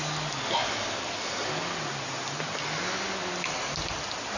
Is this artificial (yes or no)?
no